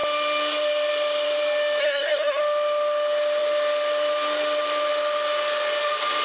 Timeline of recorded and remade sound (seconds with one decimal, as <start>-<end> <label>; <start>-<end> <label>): 0.0-1.8 recorded; 1.8-2.4 remade; 2.4-6.2 recorded